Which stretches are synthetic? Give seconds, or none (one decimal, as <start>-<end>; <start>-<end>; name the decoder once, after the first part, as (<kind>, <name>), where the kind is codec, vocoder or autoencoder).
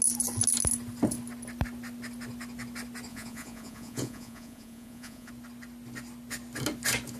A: 3.1-5.3 (vocoder, Vocos)